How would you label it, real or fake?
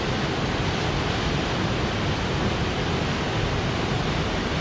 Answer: real